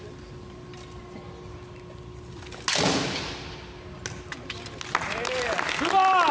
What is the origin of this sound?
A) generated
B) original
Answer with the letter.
B